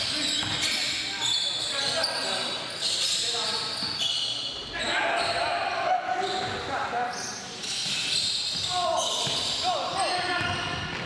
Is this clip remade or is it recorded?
recorded